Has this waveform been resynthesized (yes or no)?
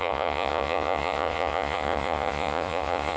yes